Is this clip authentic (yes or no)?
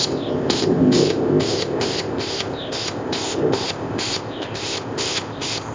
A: no